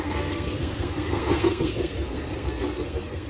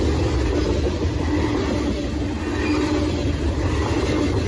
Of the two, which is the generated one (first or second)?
first